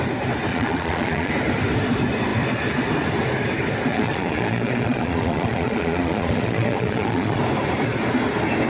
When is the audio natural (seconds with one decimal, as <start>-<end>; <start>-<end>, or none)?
0.0-0.5; 1.3-3.9; 7.4-8.7